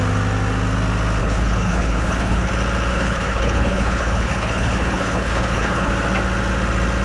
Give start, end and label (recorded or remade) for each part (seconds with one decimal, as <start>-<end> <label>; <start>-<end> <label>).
0.0-1.2 recorded; 1.2-2.5 remade; 2.5-2.9 recorded; 2.9-5.9 remade; 5.9-7.0 recorded